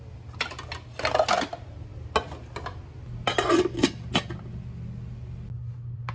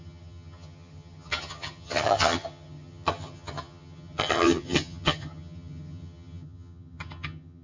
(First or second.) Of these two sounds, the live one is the first